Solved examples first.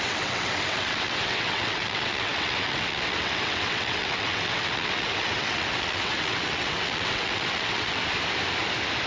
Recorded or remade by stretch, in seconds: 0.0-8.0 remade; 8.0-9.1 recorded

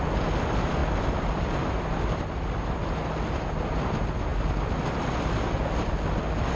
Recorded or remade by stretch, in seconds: 0.0-6.6 recorded

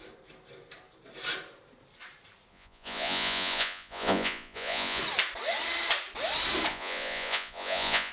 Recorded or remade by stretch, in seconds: 0.0-2.5 recorded; 2.5-5.0 remade; 5.0-6.7 recorded; 6.7-8.1 remade

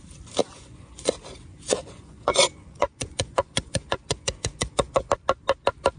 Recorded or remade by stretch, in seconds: 0.0-0.4 recorded; 0.4-1.1 remade; 1.1-1.5 recorded; 1.5-5.1 remade; 5.1-6.0 recorded

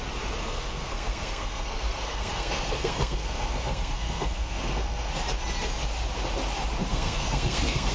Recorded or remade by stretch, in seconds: 0.0-0.4 recorded; 0.4-5.1 remade; 5.1-6.9 recorded; 6.9-7.9 remade

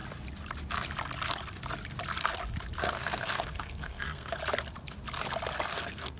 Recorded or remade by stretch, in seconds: 0.0-2.8 recorded; 2.8-4.4 remade; 4.4-5.7 recorded; 5.7-6.2 remade